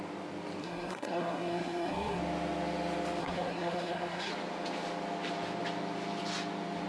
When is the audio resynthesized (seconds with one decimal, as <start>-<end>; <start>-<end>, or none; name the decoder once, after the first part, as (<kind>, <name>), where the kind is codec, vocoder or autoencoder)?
0.6-2.2 (codec, SNAC); 3.2-4.3